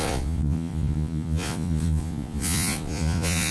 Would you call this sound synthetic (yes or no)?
yes